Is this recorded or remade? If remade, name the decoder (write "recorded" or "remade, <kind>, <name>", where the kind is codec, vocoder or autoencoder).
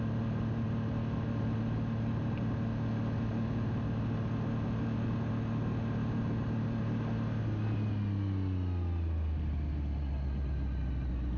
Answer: recorded